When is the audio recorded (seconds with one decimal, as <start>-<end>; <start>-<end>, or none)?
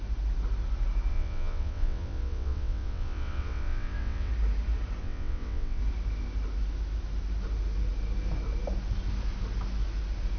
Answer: 0.0-1.1; 4.3-5.0; 5.8-10.4